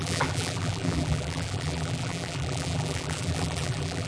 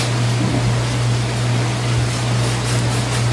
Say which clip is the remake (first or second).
first